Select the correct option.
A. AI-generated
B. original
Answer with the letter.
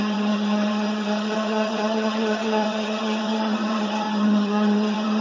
A